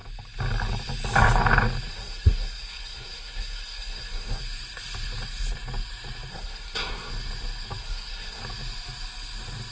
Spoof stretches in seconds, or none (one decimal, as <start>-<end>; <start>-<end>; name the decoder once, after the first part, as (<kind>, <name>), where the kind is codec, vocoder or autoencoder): 1.9-4.4 (codec, SNAC); 6.3-7.1; 7.8-8.4